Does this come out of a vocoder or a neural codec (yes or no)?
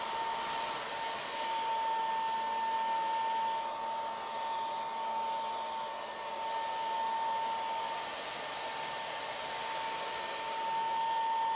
no